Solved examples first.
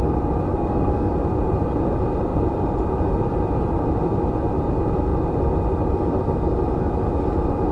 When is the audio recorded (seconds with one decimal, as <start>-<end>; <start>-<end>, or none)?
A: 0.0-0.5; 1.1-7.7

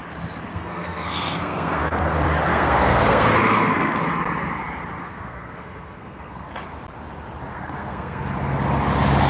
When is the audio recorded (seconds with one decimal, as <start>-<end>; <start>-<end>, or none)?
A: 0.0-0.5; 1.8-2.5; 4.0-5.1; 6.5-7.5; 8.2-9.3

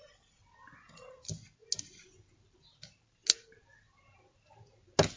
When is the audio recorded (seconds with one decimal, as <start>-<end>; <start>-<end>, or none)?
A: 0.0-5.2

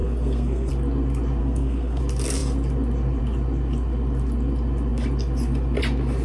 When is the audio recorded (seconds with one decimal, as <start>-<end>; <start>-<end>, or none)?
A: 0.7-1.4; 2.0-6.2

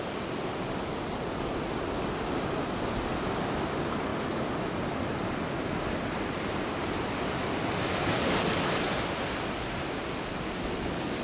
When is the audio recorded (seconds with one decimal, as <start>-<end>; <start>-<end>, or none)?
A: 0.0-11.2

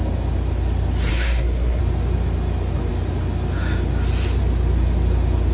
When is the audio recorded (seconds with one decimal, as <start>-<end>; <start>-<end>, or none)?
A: 0.0-1.1; 1.8-5.5

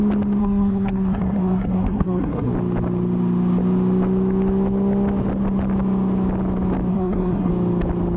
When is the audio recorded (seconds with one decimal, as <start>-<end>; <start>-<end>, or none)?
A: 0.0-0.4; 2.5-6.9; 7.5-8.2

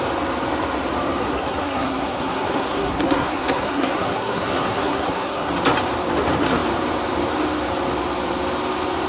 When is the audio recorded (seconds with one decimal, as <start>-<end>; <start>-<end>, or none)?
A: 0.0-1.2; 5.5-9.1